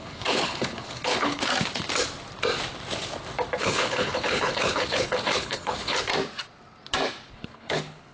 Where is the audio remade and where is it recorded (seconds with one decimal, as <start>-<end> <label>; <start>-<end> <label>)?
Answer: 0.0-1.5 remade; 1.5-3.6 recorded; 3.6-6.1 remade; 6.1-7.3 recorded; 7.3-8.1 remade